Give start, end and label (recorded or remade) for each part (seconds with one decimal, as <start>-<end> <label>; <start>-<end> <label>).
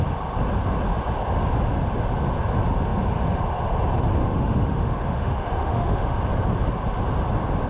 0.0-4.2 recorded; 4.2-6.2 remade; 6.2-7.7 recorded